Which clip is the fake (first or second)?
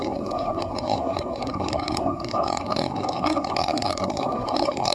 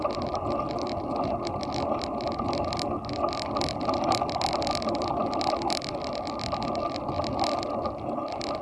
first